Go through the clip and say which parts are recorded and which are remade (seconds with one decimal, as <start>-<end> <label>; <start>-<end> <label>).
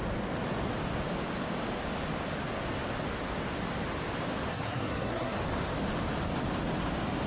0.0-4.5 recorded; 4.5-5.4 remade; 5.4-7.3 recorded